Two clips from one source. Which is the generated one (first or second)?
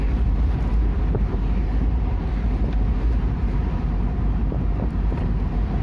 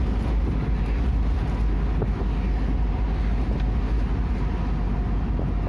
first